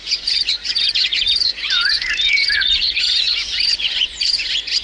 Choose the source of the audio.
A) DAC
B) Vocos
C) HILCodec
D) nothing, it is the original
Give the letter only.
B